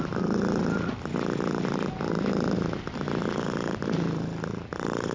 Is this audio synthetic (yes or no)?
no